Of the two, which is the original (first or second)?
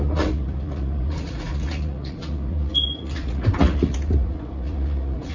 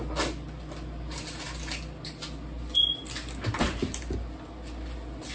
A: second